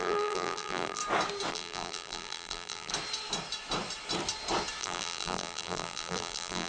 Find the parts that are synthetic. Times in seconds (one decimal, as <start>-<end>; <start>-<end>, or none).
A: 0.0-1.0; 1.5-2.9; 4.8-6.7